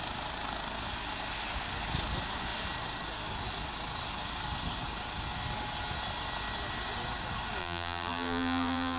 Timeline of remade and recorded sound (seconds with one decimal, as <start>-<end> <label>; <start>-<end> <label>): 0.0-7.6 recorded; 7.6-9.0 remade